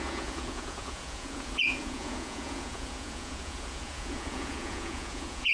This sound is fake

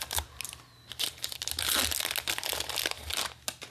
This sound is real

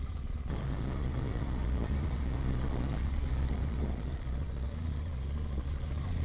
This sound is fake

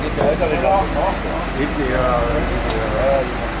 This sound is real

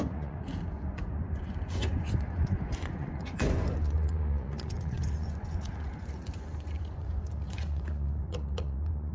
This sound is fake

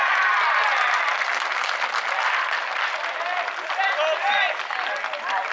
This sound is real